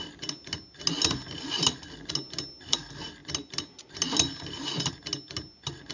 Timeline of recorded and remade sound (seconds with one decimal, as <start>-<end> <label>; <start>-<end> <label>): 0.0-5.9 recorded